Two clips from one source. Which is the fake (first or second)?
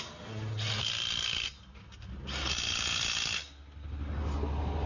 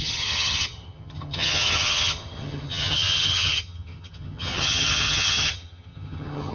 second